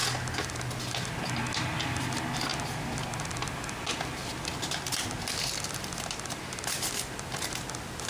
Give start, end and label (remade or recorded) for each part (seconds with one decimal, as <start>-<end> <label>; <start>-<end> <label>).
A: 0.0-8.1 recorded